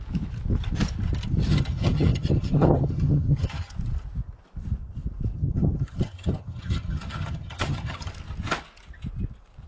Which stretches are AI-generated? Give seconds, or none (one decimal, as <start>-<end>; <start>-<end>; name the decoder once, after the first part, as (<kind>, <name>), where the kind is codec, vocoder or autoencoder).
1.5-3.7 (vocoder, HiFi-GAN); 5.4-8.1